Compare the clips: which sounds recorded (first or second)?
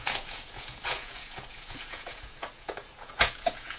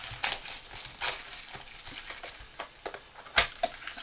second